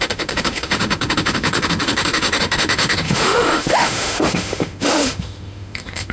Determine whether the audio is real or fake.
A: fake